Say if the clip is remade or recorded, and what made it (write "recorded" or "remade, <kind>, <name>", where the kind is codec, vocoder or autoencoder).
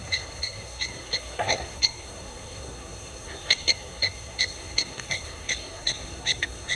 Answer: remade, codec, SNAC